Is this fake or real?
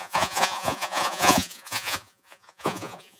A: fake